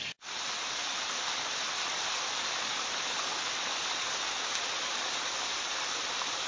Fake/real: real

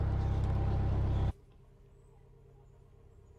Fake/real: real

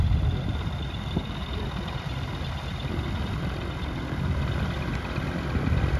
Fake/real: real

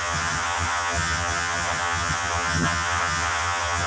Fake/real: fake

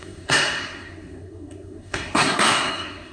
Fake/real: fake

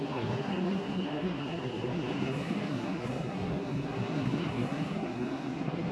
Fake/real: fake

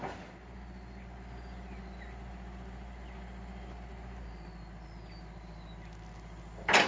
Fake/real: real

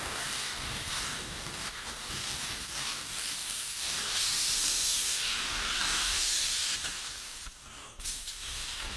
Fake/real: fake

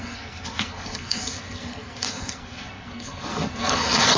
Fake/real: fake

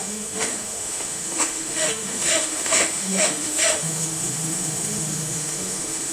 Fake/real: fake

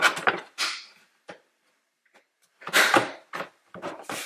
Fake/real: fake